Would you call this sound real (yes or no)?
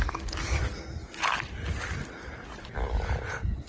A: yes